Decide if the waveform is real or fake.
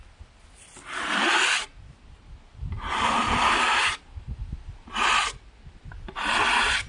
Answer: real